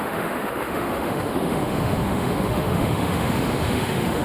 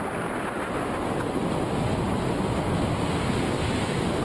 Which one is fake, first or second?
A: first